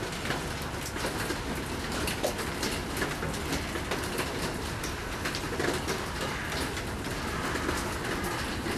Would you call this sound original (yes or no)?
yes